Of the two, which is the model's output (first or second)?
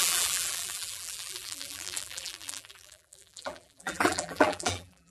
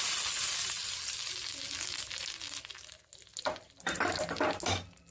first